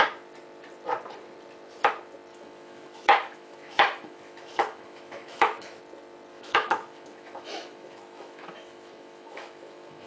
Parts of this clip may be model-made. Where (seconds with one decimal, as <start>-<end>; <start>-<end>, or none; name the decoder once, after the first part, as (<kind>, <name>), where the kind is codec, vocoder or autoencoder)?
2.3-5.8 (autoencoder, DAC-VAE); 6.3-10.1